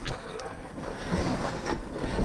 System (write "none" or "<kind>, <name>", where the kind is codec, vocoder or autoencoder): codec, SNAC